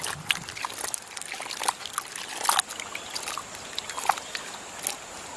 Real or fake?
real